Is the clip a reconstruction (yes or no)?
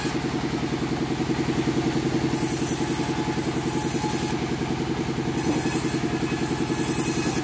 no